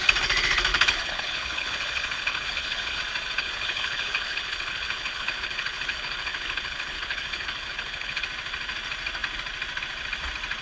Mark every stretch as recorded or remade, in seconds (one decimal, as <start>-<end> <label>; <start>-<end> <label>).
0.0-0.7 recorded; 0.7-3.0 remade; 3.0-3.4 recorded; 3.4-8.2 remade; 8.2-10.6 recorded